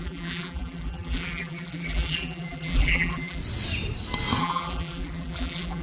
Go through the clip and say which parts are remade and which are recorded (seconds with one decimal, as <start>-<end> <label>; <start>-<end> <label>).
0.0-3.4 remade; 3.4-4.4 recorded; 4.4-5.8 remade